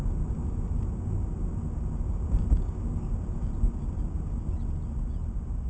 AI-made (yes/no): no